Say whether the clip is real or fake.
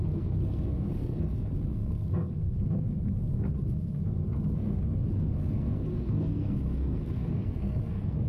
fake